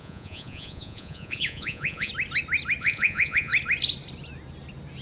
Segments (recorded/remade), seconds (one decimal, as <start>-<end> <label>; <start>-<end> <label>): 0.0-2.1 remade; 2.1-2.8 recorded; 2.8-3.5 remade; 3.5-5.0 recorded